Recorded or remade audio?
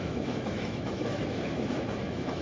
remade